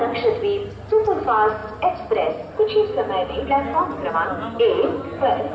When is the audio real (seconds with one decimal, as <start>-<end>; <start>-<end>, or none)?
0.0-5.5